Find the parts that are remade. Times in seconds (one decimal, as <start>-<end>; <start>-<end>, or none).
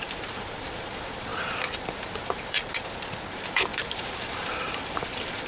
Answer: 0.0-2.6; 3.3-5.5